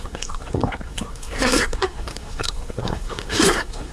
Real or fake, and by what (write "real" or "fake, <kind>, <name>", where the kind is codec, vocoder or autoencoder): fake, codec, SNAC